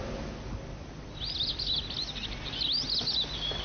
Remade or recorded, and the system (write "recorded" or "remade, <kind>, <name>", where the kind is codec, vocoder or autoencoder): recorded